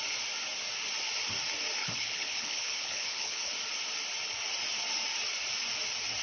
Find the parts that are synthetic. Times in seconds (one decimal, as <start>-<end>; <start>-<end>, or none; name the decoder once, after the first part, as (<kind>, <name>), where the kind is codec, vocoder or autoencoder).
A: 1.8-3.5 (codec, HILCodec)